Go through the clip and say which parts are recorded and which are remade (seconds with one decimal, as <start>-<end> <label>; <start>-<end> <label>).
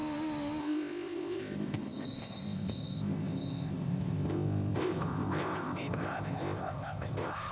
0.0-0.6 recorded; 0.6-7.5 remade